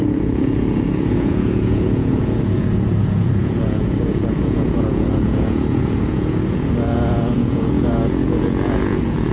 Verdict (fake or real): fake